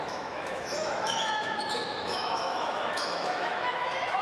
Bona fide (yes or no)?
no